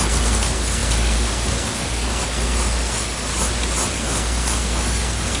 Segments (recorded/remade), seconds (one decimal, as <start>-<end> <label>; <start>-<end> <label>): 0.0-3.3 remade; 3.3-3.9 recorded; 3.9-5.4 remade